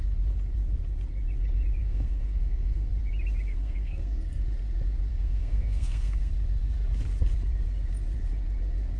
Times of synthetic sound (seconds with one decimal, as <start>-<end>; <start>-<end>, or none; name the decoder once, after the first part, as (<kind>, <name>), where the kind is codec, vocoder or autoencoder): 1.8-2.9 (codec, SNAC); 3.5-4.4; 5.1-6.3